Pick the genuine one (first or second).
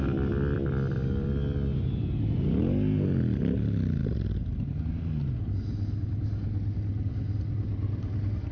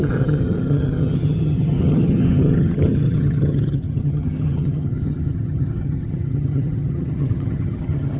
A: first